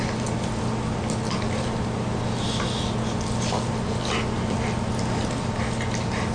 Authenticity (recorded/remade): recorded